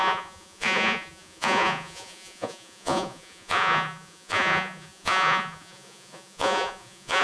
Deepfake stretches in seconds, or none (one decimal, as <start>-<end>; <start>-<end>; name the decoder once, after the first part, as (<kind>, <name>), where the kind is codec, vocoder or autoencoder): 0.0-7.2 (vocoder, Vocos)